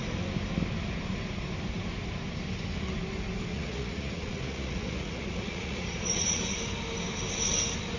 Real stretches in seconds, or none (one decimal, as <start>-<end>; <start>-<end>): 0.0-3.5; 6.4-8.0